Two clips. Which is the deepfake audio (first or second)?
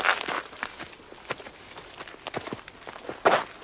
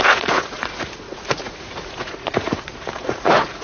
second